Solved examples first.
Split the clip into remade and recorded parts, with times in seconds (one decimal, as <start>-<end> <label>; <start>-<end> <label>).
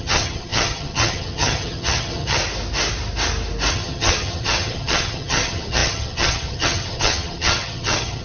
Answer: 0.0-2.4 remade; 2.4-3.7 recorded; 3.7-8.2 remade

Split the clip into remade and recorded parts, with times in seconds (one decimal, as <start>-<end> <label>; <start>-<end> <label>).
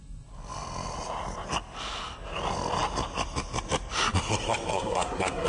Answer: 0.0-4.7 recorded; 4.7-5.5 remade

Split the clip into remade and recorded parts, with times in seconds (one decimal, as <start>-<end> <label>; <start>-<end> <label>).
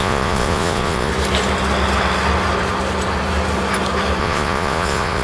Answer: 0.0-1.1 remade; 1.1-4.2 recorded; 4.2-5.2 remade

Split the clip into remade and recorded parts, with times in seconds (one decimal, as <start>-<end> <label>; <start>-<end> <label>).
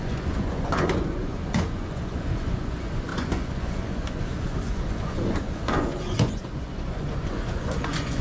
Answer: 0.0-8.2 remade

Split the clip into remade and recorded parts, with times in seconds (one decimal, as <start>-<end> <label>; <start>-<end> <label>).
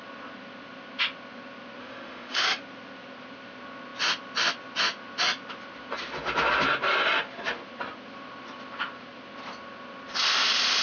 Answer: 0.0-1.8 recorded; 1.8-2.6 remade; 2.6-10.8 recorded